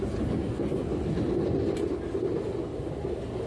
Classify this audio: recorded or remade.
recorded